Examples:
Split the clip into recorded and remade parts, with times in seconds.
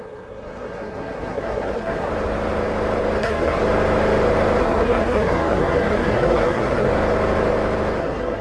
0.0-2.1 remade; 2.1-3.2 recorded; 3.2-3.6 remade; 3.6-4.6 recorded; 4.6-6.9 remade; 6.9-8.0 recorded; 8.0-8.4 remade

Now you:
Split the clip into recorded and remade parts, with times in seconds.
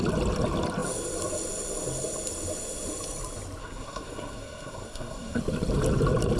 0.0-3.6 recorded; 3.6-5.4 remade; 5.4-6.4 recorded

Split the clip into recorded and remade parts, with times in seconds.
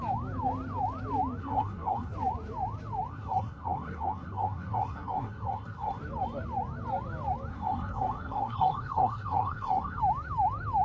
0.0-1.4 recorded; 1.4-2.1 remade; 2.1-3.1 recorded; 3.1-6.0 remade; 6.0-7.5 recorded; 7.5-10.0 remade; 10.0-10.8 recorded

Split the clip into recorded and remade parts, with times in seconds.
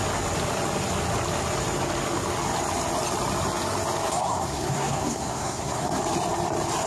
0.0-4.1 recorded; 4.1-6.0 remade; 6.0-6.9 recorded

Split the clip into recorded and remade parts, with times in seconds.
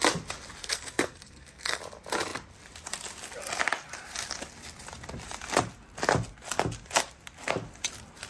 0.0-0.6 recorded; 0.6-1.8 remade; 1.8-8.3 recorded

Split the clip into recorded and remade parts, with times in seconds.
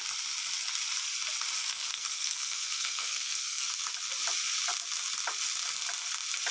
0.0-1.6 recorded; 1.6-3.7 remade; 3.7-6.5 recorded